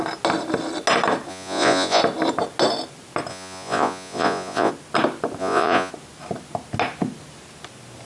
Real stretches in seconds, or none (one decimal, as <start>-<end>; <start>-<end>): 0.0-1.3; 2.0-3.3; 4.7-5.4; 5.9-8.1